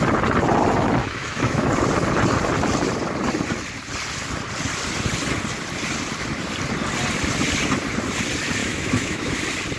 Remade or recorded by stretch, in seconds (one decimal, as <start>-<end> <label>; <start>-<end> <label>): 0.0-1.0 recorded; 1.0-1.7 remade; 1.7-8.6 recorded; 8.6-9.4 remade; 9.4-9.8 recorded